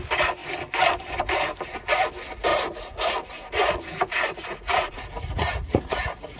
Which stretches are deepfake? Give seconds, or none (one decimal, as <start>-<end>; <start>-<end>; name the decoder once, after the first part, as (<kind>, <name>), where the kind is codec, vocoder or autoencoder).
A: 2.5-6.4 (vocoder, Vocos)